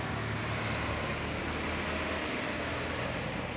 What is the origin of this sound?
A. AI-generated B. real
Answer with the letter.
B